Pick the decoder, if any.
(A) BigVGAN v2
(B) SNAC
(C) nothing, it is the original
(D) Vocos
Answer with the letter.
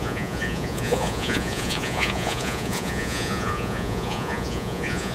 D